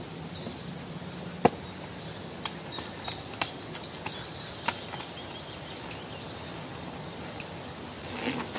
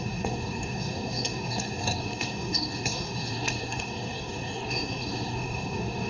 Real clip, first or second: first